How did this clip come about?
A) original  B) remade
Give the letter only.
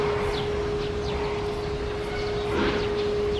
A